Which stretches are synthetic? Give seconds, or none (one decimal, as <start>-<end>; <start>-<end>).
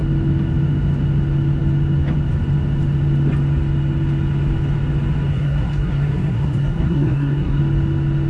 5.3-7.6